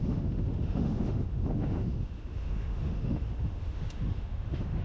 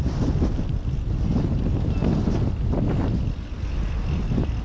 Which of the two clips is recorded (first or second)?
second